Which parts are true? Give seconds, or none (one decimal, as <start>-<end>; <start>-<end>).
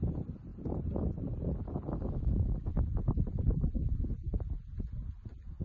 0.0-0.5; 1.6-2.7; 4.5-5.6